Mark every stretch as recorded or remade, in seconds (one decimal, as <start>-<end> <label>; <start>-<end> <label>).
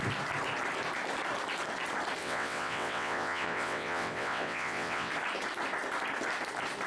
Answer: 0.0-2.2 recorded; 2.2-5.1 remade; 5.1-6.9 recorded